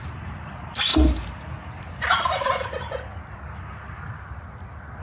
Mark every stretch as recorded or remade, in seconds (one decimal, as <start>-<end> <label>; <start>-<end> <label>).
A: 0.0-5.0 recorded